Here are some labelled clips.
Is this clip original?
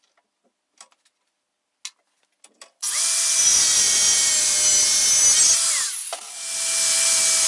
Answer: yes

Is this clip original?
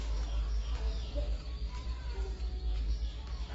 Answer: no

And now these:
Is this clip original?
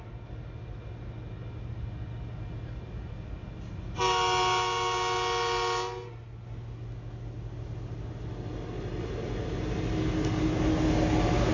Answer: yes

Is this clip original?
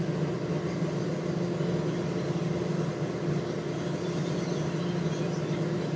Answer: yes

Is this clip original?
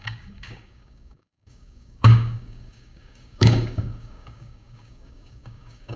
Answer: no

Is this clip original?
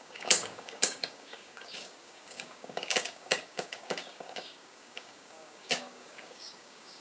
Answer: no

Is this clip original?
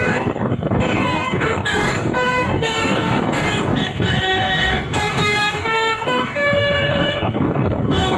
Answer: no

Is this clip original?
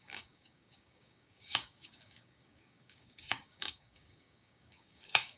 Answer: no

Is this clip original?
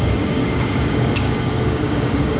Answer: no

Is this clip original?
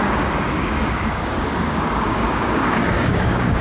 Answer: no